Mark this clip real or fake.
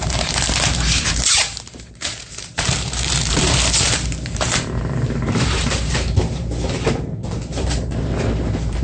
fake